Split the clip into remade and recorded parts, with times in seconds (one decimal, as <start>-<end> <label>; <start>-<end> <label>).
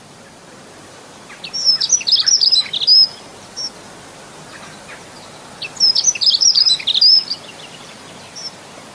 0.0-3.3 remade; 3.3-5.9 recorded; 5.9-8.9 remade